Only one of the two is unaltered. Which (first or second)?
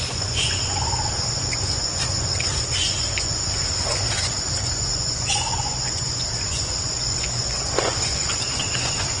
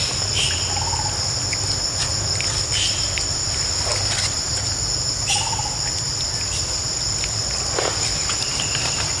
second